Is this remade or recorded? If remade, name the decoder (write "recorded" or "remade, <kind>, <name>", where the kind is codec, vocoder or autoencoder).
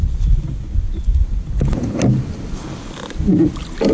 recorded